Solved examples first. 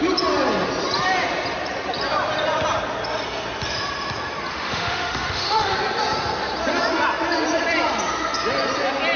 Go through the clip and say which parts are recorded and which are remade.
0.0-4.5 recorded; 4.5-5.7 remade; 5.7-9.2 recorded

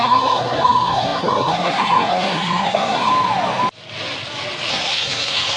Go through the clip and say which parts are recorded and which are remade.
0.0-3.1 remade; 3.1-4.7 recorded; 4.7-5.6 remade

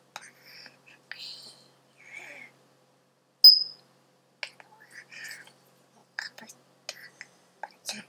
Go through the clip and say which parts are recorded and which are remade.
0.0-6.0 recorded; 6.0-6.5 remade; 6.5-8.1 recorded